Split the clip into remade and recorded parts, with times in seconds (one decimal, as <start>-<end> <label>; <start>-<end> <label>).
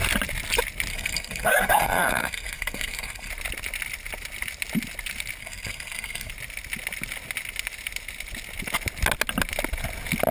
0.0-0.9 recorded; 0.9-3.3 remade; 3.3-5.4 recorded; 5.4-6.3 remade; 6.3-10.3 recorded